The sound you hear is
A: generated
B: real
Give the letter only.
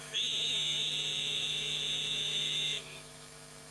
A